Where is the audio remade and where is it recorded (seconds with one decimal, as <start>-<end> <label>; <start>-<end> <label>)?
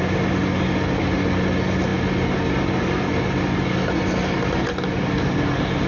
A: 0.0-5.9 recorded